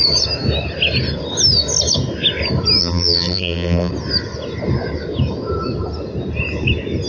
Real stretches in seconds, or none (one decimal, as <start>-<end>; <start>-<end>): 0.0-2.8; 3.9-7.1